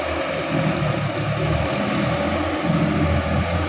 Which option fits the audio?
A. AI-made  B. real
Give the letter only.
B